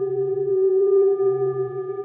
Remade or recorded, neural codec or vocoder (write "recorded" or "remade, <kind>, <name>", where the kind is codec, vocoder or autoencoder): remade, vocoder, BigVGAN v2